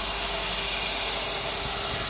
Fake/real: real